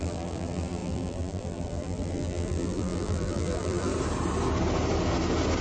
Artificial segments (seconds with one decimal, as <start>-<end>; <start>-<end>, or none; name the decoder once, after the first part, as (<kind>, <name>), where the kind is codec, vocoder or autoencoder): 0.0-3.9 (vocoder, BigVGAN v2)